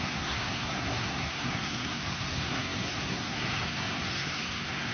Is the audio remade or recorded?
remade